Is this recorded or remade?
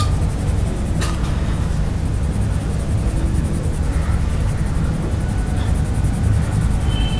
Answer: recorded